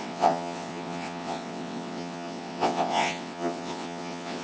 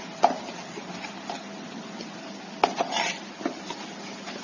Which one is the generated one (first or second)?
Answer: first